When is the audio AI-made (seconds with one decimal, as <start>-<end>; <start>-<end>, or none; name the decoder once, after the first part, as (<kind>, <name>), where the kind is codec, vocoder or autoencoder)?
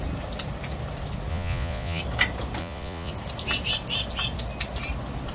1.3-2.0 (vocoder, Vocos); 2.6-3.1